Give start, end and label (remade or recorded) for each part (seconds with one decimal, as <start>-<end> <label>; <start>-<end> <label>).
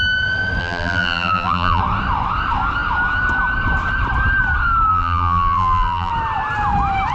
0.0-0.6 recorded; 0.6-1.8 remade; 1.8-4.9 recorded; 4.9-6.1 remade; 6.1-7.1 recorded